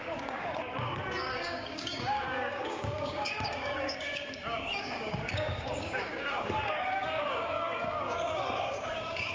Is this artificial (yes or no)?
yes